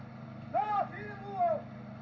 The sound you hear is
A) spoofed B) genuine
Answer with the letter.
B